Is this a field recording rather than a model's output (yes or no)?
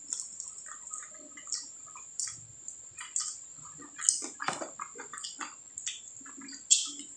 yes